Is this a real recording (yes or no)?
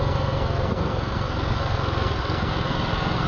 no